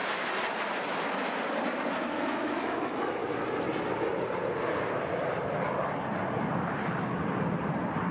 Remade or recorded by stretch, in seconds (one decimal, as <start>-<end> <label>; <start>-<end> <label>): 0.0-2.0 recorded; 2.0-3.2 remade; 3.2-8.1 recorded